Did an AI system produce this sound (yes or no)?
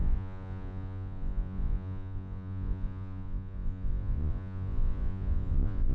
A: yes